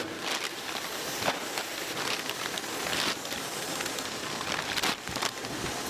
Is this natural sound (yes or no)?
yes